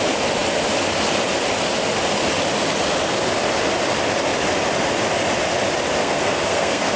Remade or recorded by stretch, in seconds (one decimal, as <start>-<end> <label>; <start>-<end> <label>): 0.0-6.0 recorded; 6.0-7.0 remade